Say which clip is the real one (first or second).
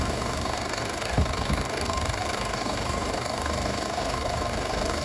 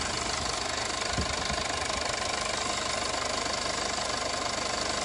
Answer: second